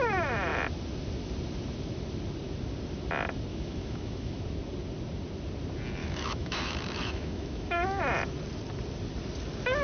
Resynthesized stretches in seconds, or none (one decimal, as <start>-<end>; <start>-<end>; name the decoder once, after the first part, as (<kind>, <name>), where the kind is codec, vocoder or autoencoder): 3.5-4.4 (autoencoder, DAC-VAE); 6.0-8.0